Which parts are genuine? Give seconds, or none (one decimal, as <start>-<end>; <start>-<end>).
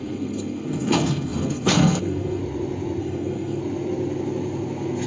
2.4-3.0; 3.6-5.1